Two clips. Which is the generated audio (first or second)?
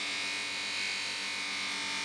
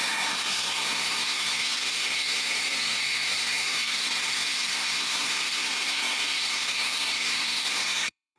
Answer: second